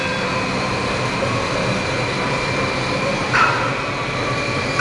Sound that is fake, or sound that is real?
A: fake